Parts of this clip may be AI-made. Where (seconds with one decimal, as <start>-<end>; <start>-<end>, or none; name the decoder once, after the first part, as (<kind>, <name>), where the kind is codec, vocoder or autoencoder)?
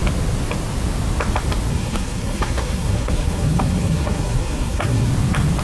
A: 1.7-5.1 (codec, SNAC)